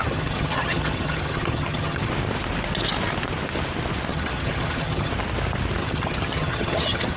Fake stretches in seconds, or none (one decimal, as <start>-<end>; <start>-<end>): 0.0-2.1; 4.1-5.1; 5.8-7.2